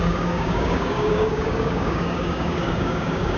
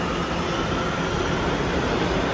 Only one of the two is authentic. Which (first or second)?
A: second